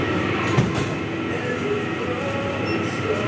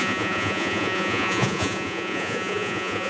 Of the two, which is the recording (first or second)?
first